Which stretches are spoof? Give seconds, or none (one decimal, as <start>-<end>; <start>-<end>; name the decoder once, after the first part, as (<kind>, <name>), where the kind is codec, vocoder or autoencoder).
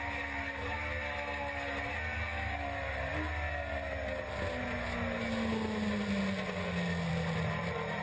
none